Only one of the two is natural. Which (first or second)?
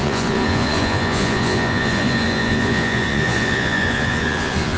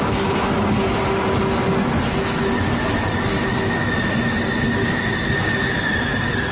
second